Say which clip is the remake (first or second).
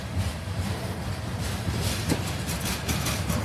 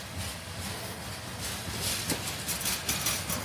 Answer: first